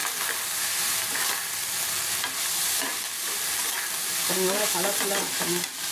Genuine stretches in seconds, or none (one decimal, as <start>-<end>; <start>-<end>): 0.0-2.9; 3.6-4.1; 4.7-5.9